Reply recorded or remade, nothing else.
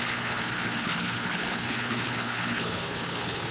remade